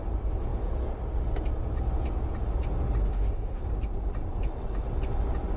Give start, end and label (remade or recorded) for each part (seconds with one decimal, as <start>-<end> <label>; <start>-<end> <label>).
0.0-3.1 recorded; 3.1-3.6 remade; 3.6-5.6 recorded